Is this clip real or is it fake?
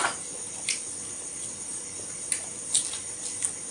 real